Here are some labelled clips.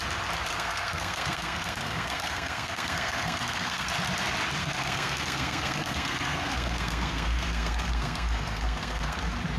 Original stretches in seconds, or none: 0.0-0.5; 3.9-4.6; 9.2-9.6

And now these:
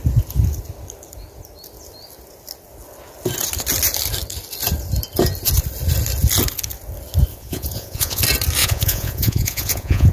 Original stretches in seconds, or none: 0.0-7.3; 8.2-8.6

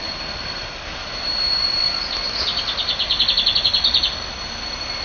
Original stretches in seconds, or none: 0.0-5.0

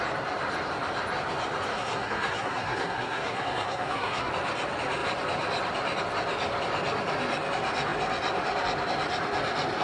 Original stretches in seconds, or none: 0.0-1.7; 4.3-9.8

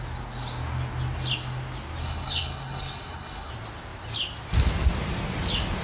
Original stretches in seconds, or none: 0.0-2.0; 3.5-5.8